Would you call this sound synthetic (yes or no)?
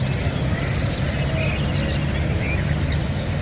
no